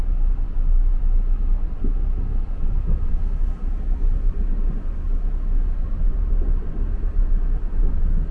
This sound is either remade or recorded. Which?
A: recorded